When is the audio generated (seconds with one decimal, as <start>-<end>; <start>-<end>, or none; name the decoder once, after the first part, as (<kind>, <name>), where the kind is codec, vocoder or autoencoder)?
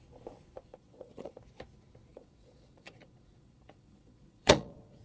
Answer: 0.7-1.4 (vocoder, Vocos); 2.1-5.0